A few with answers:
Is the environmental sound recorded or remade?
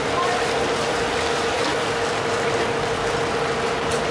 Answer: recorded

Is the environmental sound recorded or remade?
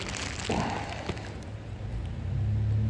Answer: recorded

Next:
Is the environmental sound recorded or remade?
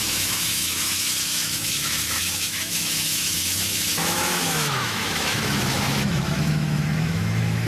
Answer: remade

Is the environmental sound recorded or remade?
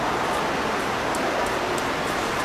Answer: recorded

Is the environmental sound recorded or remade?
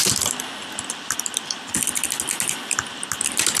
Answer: recorded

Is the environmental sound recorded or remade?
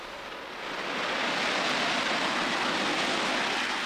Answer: recorded